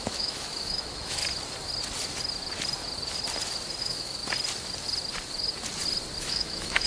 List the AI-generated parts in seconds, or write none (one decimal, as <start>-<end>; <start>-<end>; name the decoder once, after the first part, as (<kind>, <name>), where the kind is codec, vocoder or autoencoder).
0.0-1.2 (autoencoder, DAC-VAE); 3.8-4.2; 6.2-6.9